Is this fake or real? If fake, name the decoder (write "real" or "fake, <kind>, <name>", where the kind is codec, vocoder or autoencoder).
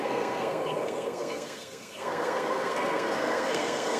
fake, codec, SNAC